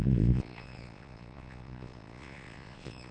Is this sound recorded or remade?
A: remade